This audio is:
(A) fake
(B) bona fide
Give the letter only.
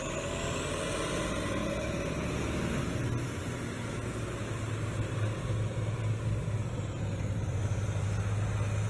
B